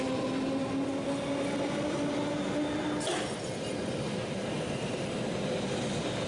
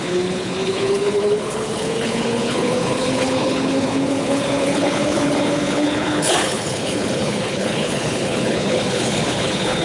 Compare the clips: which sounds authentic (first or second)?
first